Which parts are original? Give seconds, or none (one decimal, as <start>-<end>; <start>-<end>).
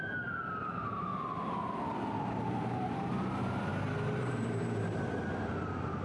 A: 1.1-1.9; 3.7-4.2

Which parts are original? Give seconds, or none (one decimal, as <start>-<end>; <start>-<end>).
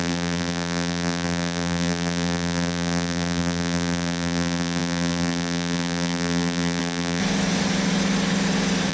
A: 7.2-8.9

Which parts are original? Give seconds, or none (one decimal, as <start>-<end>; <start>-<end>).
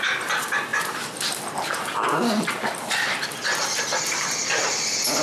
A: 0.0-0.7; 3.8-5.2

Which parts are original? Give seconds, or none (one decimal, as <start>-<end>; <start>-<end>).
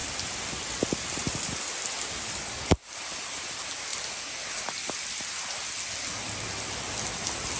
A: 3.9-7.6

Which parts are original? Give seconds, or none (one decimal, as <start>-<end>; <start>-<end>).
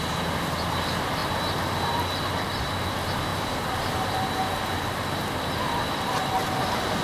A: 0.0-1.2; 1.9-3.3; 4.8-7.0